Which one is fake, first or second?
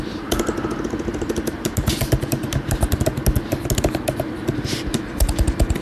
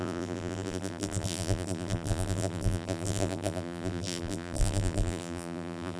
second